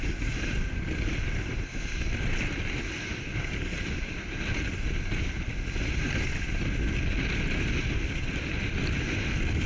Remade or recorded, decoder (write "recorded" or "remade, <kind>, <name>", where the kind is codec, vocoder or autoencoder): recorded